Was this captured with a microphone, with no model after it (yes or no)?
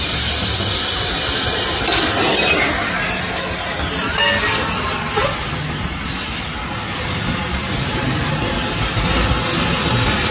yes